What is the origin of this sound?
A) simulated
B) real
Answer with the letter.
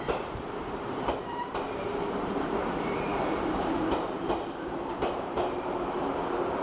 A